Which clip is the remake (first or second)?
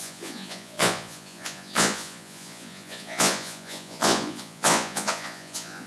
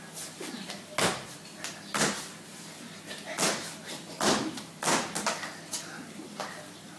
first